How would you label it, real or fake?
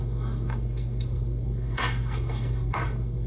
fake